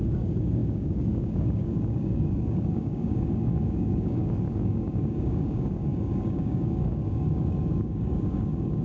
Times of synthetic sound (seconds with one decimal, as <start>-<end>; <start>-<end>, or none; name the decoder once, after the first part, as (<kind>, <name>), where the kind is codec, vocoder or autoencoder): 0.0-8.8 (codec, DAC)